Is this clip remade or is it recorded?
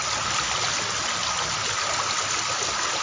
recorded